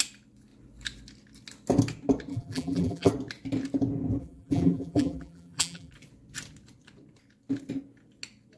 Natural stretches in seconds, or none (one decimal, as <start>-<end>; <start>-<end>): 0.0-2.3; 3.1-4.2; 5.9-8.6